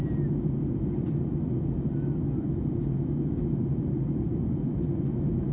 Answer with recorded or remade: recorded